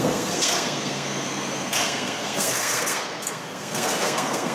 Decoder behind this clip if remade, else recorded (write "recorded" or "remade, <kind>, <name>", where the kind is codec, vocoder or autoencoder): remade, codec, SNAC